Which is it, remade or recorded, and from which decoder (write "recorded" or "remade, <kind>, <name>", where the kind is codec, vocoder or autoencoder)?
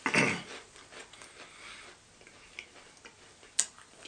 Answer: recorded